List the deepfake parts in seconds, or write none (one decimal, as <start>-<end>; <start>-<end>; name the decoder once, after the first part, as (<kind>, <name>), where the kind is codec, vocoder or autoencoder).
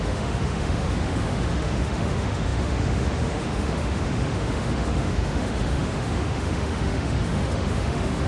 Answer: 0.0-8.3 (autoencoder, DAC-VAE)